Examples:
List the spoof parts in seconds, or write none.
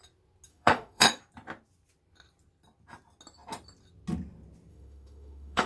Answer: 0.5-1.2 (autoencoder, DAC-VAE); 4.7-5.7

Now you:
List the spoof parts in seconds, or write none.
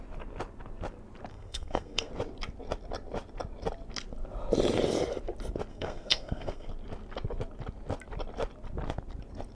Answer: 1.3-2.1 (codec, SNAC); 5.7-6.7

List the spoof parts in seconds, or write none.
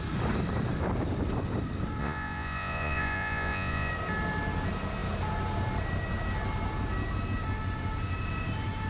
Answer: 2.0-3.9 (vocoder, Vocos)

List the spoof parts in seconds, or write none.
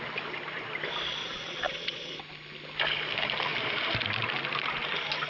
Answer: 1.2-2.1 (vocoder, Vocos)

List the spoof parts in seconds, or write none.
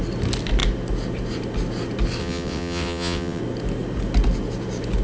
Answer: 2.2-3.4 (vocoder, WaveNeXt)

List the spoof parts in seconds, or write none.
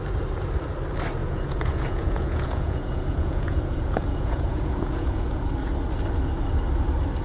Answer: 1.2-5.5 (vocoder, Vocos)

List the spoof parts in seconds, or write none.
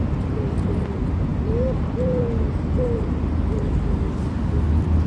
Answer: none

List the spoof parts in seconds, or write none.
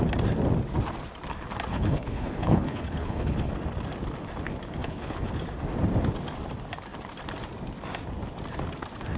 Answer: 1.7-3.5 (codec, HILCodec); 4.8-5.3